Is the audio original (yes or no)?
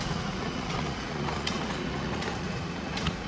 no